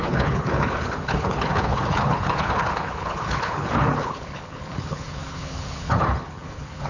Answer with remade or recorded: remade